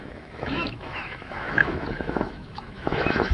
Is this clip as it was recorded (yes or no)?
no